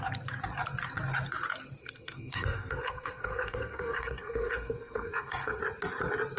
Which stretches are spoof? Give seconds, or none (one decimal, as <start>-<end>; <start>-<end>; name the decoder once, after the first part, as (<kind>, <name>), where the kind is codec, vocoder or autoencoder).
1.8-5.6 (codec, SNAC)